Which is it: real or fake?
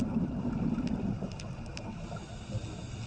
real